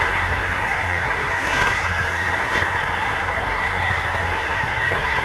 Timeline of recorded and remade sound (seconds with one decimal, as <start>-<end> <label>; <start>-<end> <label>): 0.0-5.2 remade